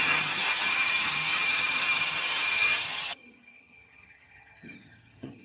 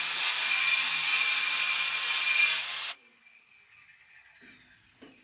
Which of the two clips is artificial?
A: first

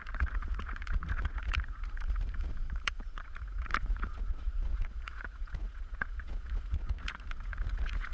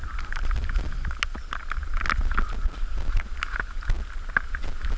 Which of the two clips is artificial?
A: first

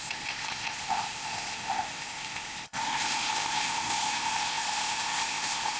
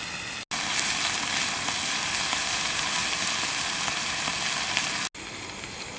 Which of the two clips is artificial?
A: first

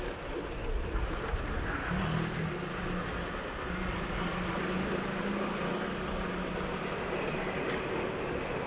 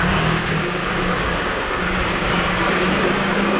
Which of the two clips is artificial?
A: second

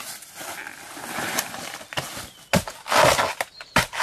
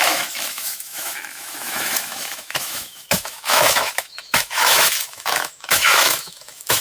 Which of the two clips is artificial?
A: second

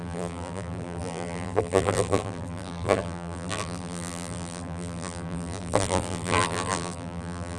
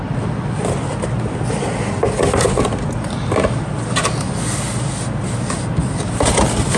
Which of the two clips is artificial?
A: first